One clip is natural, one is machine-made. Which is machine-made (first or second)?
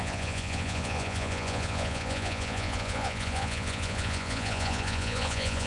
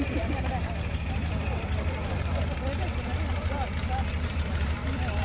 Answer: first